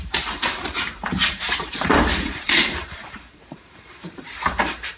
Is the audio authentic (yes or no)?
no